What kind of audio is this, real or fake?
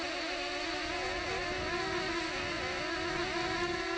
real